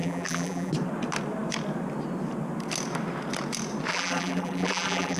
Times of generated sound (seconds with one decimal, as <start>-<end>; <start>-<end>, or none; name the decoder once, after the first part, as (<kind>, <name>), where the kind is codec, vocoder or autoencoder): 0.0-0.7 (vocoder, BigVGAN v2); 3.9-5.2